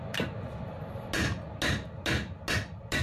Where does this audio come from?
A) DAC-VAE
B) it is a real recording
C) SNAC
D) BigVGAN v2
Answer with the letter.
B